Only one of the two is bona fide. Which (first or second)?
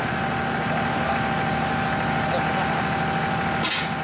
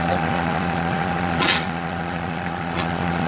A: first